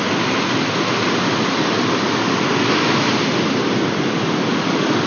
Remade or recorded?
recorded